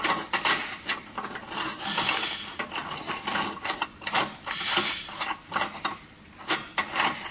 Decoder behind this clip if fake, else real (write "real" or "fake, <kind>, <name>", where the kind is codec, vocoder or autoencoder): fake, vocoder, BigVGAN v2